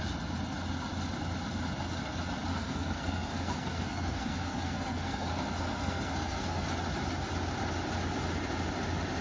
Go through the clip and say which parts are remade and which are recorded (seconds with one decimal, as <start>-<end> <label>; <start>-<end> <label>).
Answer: 0.0-2.5 recorded; 2.5-6.7 remade; 6.7-9.2 recorded